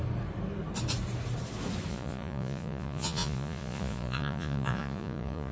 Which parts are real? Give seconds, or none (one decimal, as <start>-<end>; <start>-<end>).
0.0-1.9